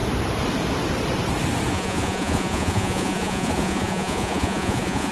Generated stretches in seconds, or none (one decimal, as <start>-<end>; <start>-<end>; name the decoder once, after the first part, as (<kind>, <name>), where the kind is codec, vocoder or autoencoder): 1.7-5.1 (vocoder, Vocos)